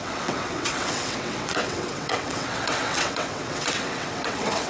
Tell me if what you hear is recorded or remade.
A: remade